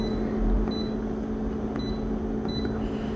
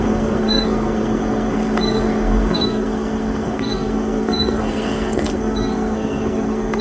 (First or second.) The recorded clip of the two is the first